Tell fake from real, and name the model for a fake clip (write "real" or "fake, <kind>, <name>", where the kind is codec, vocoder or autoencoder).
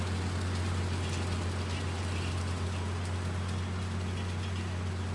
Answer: real